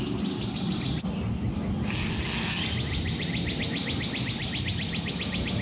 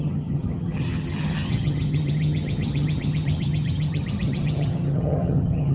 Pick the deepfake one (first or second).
second